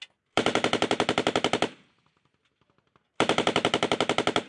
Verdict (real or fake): real